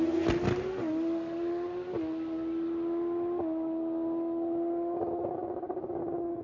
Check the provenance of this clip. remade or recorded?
recorded